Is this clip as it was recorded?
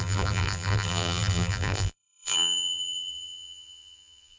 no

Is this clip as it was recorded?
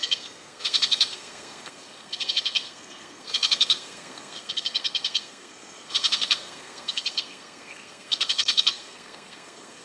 no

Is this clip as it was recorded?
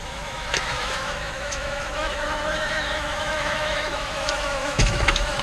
no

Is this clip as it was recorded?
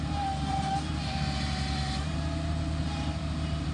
no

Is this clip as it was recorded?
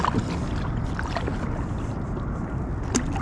yes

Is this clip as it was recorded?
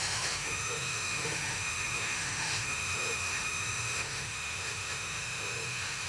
no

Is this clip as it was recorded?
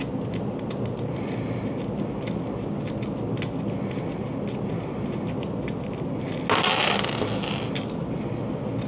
yes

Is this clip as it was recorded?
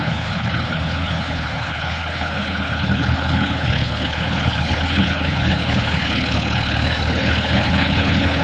no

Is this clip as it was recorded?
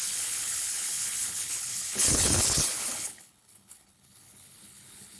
no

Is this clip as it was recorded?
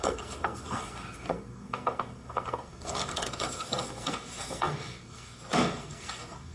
no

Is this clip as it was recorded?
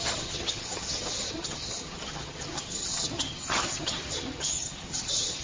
no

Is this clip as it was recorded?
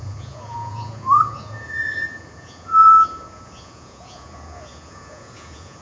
no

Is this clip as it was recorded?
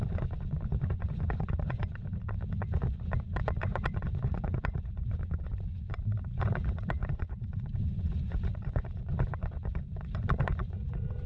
no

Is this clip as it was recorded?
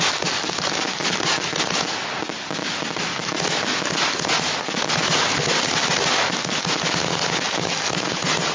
yes